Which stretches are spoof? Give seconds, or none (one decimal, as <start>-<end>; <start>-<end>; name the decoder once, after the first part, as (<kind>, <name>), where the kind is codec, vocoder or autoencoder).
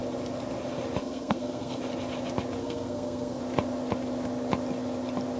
1.0-1.8 (codec, SNAC); 2.6-3.4